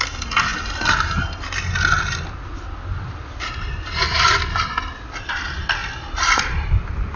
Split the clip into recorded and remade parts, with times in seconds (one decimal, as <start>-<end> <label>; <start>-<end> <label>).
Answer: 0.0-7.2 recorded